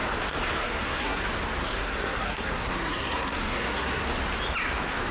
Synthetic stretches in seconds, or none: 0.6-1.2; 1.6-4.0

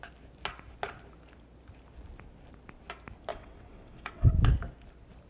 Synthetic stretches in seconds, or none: 3.3-4.3

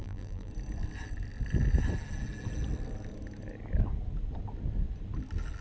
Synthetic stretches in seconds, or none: 0.0-0.5

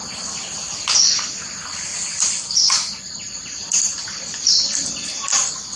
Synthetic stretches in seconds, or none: none